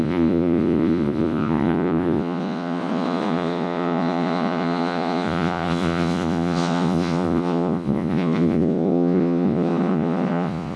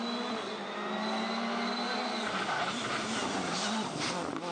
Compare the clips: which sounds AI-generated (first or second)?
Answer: first